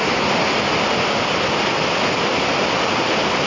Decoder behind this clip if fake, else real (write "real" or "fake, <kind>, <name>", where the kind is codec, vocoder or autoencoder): real